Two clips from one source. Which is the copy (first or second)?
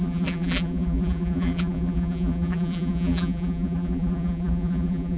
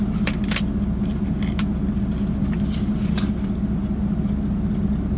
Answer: first